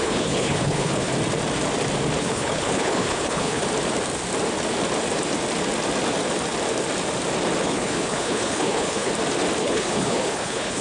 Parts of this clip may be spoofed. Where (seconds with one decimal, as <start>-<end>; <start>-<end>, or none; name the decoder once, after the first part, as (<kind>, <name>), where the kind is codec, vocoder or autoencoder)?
0.0-1.1 (codec, HILCodec); 2.2-3.6; 7.6-9.1; 9.6-10.8